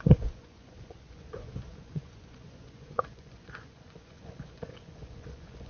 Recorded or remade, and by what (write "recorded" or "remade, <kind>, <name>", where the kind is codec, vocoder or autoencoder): remade, vocoder, Vocos